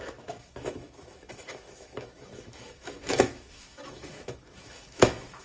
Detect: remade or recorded remade